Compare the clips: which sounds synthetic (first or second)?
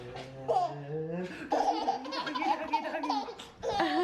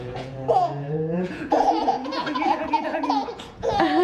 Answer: second